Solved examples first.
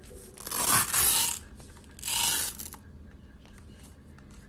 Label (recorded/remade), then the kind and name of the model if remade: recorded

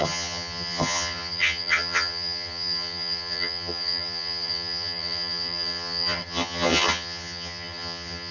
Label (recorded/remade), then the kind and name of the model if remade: remade, vocoder, HiFi-GAN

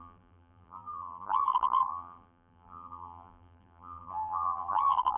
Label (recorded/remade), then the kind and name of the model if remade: remade, vocoder, BigVGAN v2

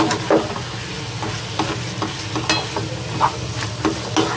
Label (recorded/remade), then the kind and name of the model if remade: recorded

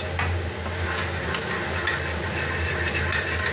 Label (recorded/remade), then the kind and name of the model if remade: recorded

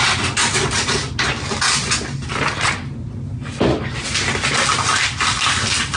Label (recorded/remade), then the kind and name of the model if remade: recorded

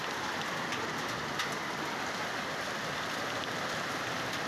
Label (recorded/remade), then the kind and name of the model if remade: recorded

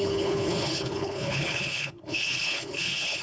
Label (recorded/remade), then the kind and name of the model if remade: remade, codec, HILCodec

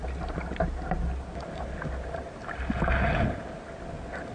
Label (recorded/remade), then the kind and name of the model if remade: recorded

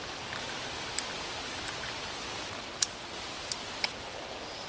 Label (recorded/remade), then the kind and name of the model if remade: recorded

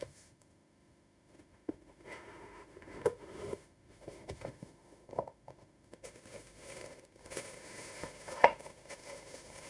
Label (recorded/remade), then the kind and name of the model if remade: remade, autoencoder, DAC-VAE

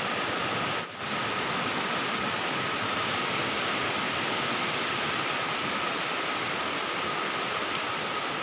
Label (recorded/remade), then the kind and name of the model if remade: recorded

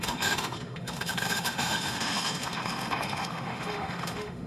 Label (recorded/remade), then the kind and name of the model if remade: remade, autoencoder, DAC-VAE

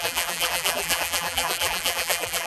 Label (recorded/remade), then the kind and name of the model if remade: remade, vocoder, BigVGAN v2